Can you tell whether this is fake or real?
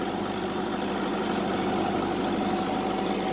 real